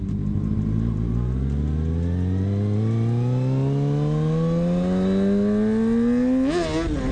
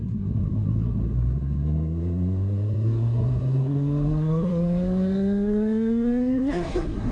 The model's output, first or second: second